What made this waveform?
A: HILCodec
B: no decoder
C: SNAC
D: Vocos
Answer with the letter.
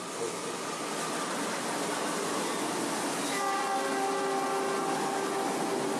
B